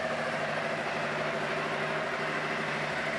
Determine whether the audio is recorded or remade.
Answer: recorded